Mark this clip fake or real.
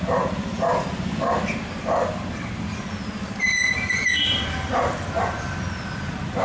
real